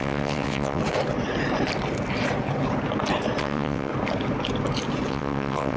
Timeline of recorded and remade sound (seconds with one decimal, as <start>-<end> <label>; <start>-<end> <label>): 0.0-0.8 remade; 0.8-3.4 recorded; 3.4-3.9 remade; 3.9-5.1 recorded; 5.1-5.8 remade